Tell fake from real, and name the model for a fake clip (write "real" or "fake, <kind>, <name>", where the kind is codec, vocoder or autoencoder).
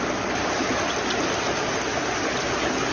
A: real